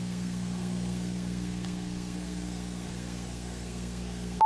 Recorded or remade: remade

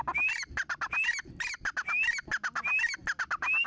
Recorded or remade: recorded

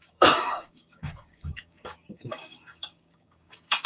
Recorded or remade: remade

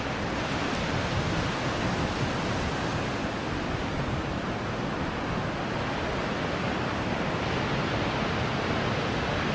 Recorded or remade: recorded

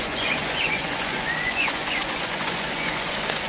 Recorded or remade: remade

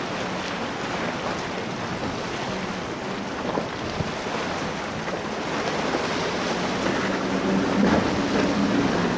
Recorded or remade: recorded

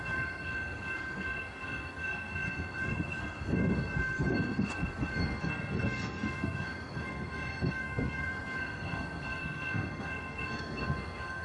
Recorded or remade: remade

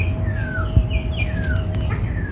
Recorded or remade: recorded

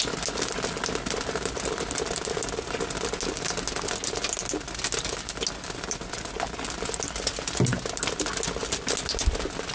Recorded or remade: recorded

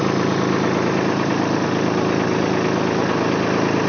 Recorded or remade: recorded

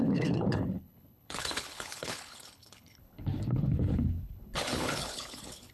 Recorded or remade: remade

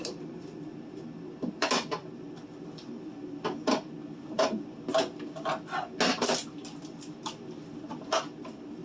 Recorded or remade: recorded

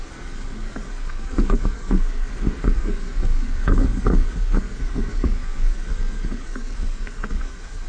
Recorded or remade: remade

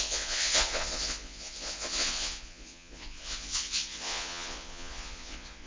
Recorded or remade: remade